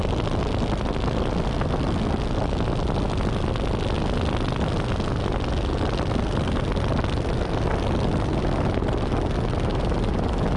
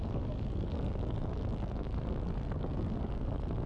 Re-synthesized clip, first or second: second